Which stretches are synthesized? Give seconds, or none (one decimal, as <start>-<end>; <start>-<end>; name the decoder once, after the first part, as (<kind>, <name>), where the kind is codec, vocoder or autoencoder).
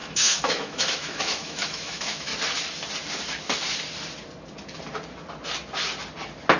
0.0-2.3 (autoencoder, DAC-VAE)